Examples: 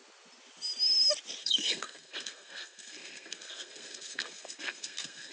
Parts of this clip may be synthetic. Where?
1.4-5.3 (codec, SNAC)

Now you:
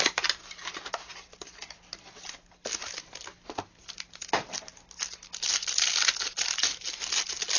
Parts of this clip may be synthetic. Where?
none

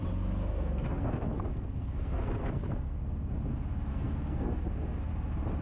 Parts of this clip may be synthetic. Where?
0.5-3.3 (codec, SNAC); 3.9-5.1

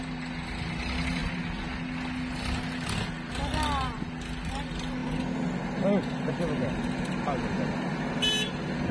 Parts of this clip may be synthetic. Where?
none

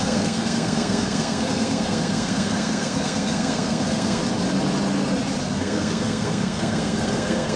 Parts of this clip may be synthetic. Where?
0.0-4.2 (codec, SNAC); 5.4-7.6